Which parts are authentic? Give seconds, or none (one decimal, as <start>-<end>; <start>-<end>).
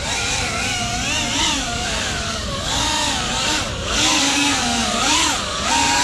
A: 0.8-1.4